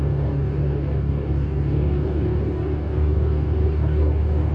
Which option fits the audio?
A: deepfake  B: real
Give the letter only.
A